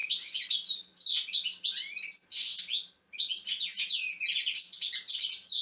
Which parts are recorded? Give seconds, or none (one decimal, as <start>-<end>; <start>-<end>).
0.0-5.6